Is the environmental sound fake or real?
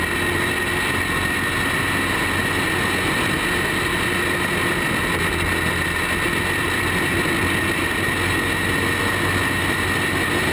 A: real